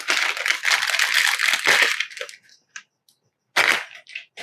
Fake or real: real